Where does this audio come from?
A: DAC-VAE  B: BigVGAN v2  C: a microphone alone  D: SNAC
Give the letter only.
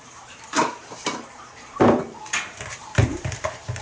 B